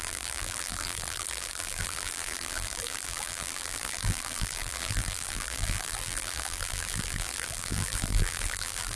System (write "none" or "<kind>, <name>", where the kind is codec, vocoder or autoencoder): vocoder, BigVGAN v2